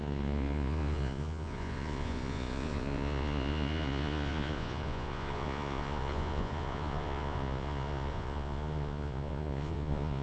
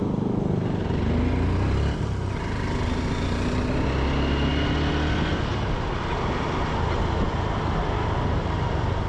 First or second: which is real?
second